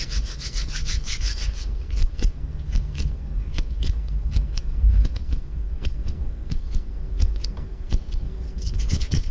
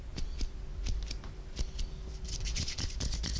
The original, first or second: second